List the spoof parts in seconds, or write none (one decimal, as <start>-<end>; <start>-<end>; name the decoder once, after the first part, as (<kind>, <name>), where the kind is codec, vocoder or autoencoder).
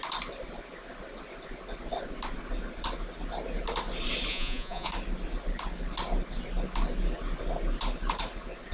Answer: 4.3-4.9 (vocoder, Vocos)